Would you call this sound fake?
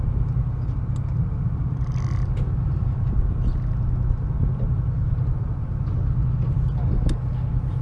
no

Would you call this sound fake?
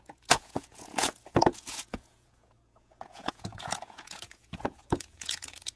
yes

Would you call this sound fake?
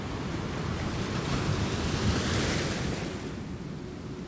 no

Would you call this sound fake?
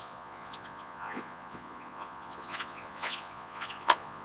yes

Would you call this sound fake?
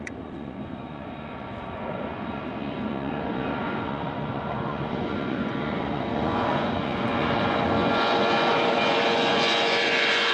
yes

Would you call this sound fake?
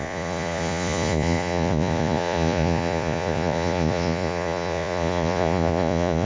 yes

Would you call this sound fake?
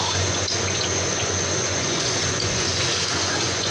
yes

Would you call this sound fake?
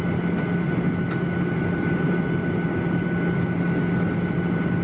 no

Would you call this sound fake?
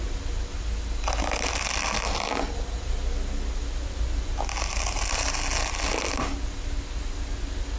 no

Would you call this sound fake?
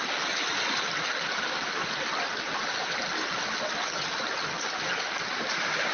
no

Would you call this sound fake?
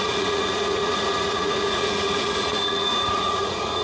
yes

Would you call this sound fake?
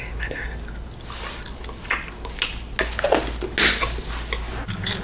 no